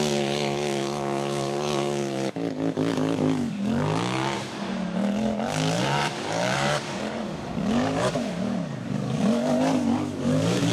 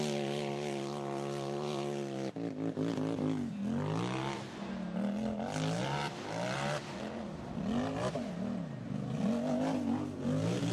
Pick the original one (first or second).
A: second